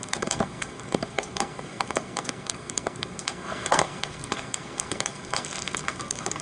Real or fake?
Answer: fake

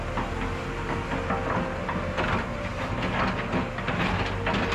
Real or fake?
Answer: real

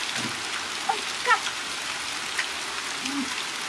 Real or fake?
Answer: real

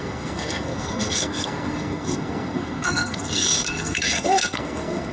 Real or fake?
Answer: fake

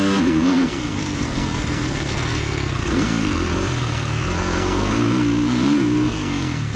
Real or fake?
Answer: fake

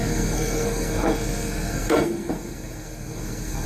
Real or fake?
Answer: fake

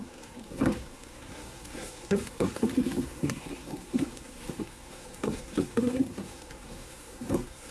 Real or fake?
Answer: fake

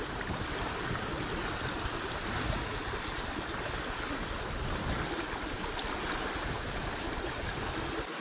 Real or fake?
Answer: real